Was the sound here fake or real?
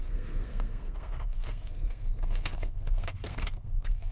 fake